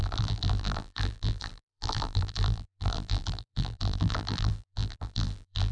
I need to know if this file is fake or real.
fake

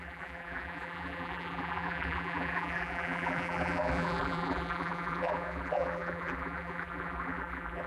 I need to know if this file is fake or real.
fake